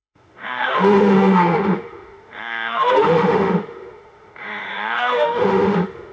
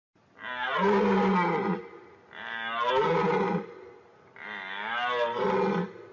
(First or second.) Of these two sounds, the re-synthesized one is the first